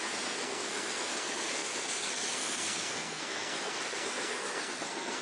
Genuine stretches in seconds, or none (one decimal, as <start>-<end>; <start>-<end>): none